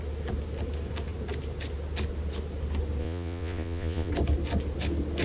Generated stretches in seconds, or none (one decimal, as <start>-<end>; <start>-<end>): 3.0-4.1

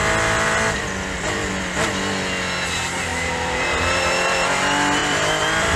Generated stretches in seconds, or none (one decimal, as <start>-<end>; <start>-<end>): 3.1-4.5; 5.0-5.8

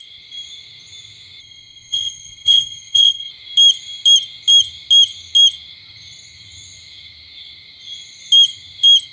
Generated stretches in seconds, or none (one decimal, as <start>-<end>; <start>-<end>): 1.4-3.3

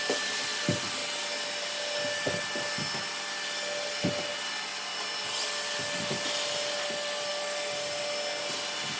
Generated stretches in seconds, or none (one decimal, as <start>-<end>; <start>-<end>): none